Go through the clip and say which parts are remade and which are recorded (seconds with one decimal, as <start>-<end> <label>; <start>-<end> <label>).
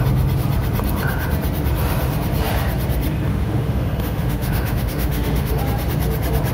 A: 0.0-3.3 recorded; 3.3-5.6 remade; 5.6-6.5 recorded